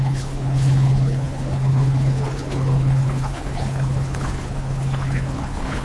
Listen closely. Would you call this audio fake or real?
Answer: fake